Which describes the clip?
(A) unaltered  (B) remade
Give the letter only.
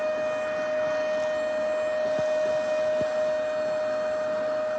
A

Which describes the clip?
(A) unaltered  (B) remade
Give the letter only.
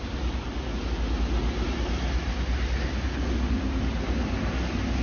A